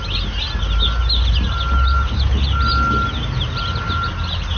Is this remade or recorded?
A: recorded